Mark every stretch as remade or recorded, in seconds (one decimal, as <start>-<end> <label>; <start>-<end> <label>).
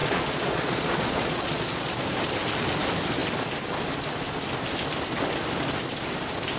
0.0-2.0 remade; 2.0-6.6 recorded